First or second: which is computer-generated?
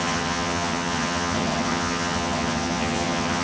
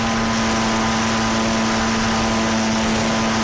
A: first